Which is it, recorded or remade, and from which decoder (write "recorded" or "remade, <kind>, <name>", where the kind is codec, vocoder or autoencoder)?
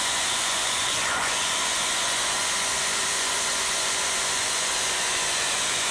remade, vocoder, Vocos